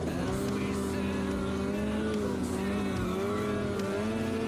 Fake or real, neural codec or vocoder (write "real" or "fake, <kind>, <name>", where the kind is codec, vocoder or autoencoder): real